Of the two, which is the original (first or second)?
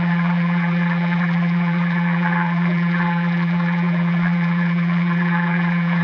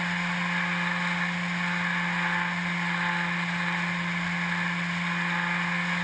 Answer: second